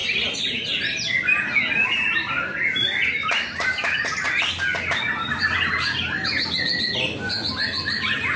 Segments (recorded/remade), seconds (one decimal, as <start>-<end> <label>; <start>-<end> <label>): 0.0-8.4 recorded